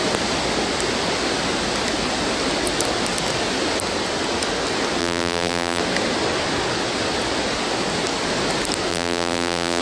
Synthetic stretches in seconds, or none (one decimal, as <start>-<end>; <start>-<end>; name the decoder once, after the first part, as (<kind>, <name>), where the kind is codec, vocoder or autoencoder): 5.0-5.8 (vocoder, BigVGAN v2); 8.9-9.8

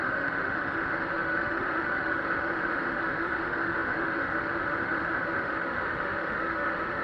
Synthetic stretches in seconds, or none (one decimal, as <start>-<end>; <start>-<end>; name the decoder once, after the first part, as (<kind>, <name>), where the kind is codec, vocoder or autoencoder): 0.0-7.0 (autoencoder, DAC-VAE)

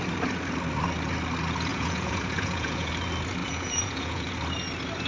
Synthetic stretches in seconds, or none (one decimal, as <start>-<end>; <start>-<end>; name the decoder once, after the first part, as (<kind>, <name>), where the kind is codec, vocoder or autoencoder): 1.7-2.9 (vocoder, Vocos); 3.4-4.3